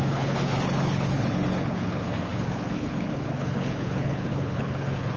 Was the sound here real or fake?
fake